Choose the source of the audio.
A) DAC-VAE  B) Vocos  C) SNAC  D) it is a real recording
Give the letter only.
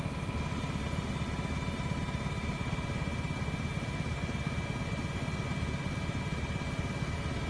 D